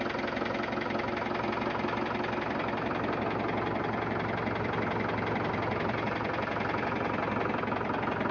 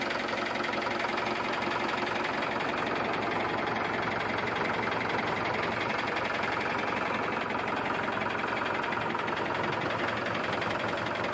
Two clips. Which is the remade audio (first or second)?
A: second